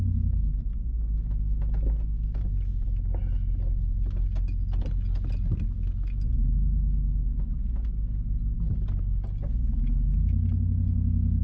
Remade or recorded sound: recorded